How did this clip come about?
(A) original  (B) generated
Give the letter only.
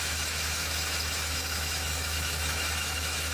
B